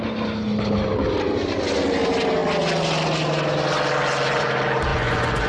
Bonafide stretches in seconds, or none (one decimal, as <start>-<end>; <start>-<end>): 0.0-4.9